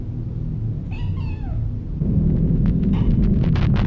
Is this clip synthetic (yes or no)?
no